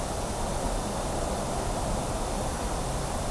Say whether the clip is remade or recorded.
recorded